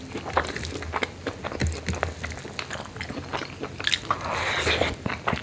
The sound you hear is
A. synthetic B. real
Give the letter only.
B